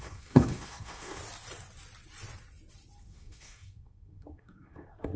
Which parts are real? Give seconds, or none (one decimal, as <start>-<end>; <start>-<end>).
1.2-3.0

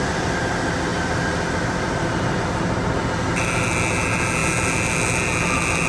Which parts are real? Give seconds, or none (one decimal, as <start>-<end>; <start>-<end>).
0.0-5.9